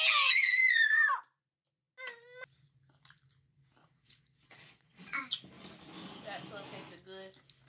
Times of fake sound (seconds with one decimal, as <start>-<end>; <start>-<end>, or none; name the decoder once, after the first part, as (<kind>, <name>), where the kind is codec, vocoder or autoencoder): 3.8-5.2 (vocoder, Vocos)